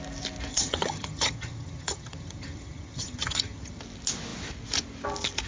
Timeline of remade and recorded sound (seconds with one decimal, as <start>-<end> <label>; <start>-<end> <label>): 0.0-0.5 recorded; 0.5-3.8 remade; 3.8-5.5 recorded